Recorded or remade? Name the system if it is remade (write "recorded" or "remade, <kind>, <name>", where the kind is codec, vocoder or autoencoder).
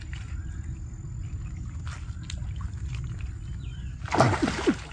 recorded